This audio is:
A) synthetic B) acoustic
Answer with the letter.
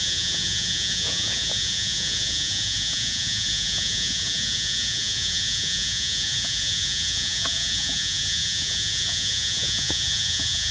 A